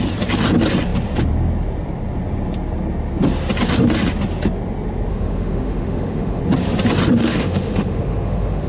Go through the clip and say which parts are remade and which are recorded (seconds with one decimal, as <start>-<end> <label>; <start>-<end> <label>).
0.0-5.1 recorded; 5.1-6.4 remade; 6.4-7.2 recorded; 7.2-8.7 remade